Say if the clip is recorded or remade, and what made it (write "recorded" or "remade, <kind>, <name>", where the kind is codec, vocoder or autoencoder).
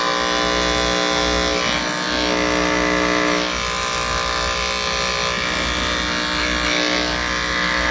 recorded